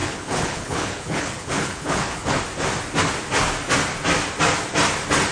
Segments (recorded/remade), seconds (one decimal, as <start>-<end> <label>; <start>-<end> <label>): 0.0-2.4 remade; 2.4-5.3 recorded